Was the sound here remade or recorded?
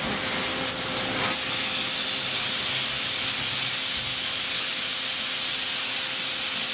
recorded